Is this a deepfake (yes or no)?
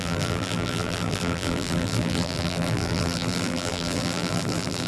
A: yes